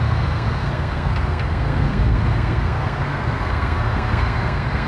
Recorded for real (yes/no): no